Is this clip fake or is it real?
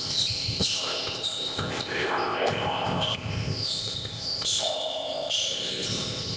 fake